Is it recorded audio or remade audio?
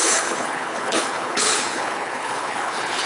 remade